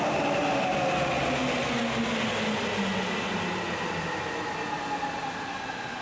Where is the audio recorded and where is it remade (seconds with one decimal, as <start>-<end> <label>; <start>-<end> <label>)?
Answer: 0.0-6.0 recorded